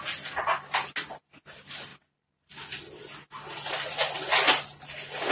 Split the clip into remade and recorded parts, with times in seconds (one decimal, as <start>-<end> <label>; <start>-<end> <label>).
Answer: 0.0-5.3 recorded